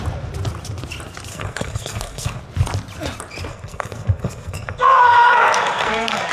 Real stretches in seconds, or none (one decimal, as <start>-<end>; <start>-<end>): 0.0-1.3; 2.4-3.5